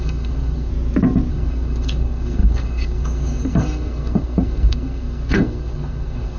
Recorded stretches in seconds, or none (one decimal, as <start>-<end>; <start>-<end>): 0.7-1.3